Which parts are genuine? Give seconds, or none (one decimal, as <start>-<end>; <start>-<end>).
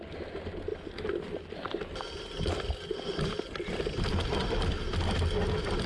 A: 0.0-5.9